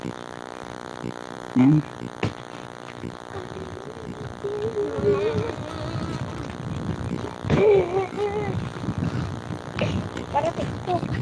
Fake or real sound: real